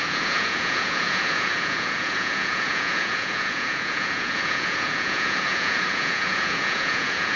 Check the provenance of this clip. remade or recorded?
remade